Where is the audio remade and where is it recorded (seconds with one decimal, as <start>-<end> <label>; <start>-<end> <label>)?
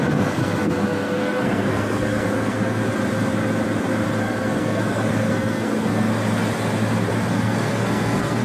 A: 0.0-2.9 remade; 2.9-4.2 recorded; 4.2-6.1 remade; 6.1-7.3 recorded; 7.3-8.4 remade